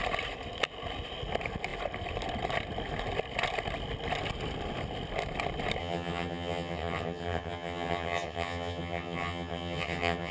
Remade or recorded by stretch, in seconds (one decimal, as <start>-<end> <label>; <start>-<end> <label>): 0.0-5.8 recorded; 5.8-10.3 remade